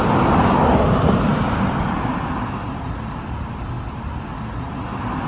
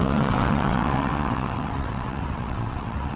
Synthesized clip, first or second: second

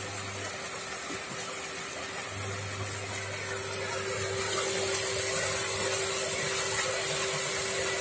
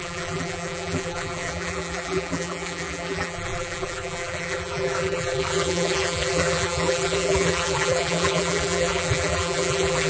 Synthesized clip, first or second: second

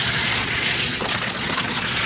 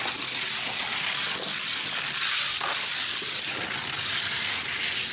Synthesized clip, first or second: first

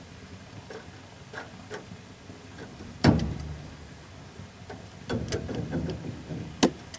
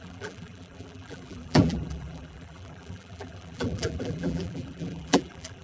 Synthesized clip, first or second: second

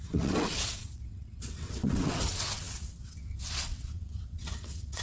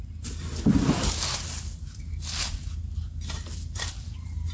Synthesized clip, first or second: first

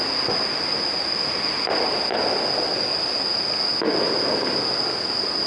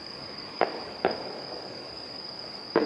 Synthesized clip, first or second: second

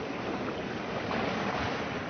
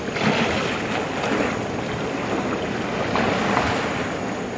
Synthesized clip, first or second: first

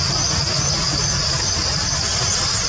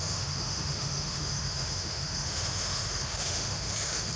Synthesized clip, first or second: second